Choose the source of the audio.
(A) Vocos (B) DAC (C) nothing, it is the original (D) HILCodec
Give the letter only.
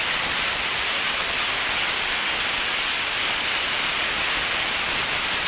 C